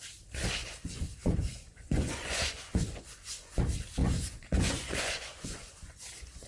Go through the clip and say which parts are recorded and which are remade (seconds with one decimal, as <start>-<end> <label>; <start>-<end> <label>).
0.0-0.6 recorded; 0.6-3.6 remade; 3.6-4.0 recorded; 4.0-6.5 remade